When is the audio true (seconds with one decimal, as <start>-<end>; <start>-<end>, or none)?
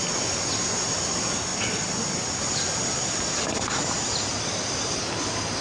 0.0-5.6